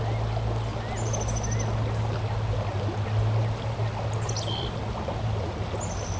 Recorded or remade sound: recorded